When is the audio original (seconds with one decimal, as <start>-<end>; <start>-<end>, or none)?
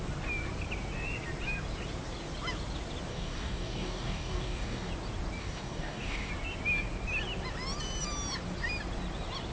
0.0-3.1; 4.9-5.4; 6.3-9.5